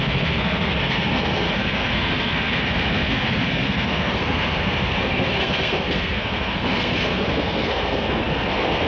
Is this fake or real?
fake